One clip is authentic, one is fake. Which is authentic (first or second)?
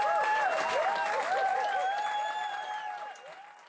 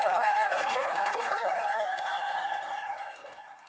first